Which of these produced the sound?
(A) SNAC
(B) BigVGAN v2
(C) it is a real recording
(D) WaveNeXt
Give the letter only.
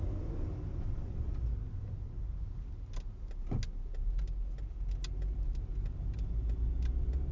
C